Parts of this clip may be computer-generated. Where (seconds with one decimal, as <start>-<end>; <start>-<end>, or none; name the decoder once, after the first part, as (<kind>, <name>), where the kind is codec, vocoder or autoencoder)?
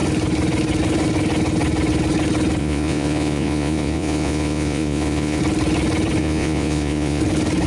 2.6-5.4 (vocoder, Vocos); 6.2-7.2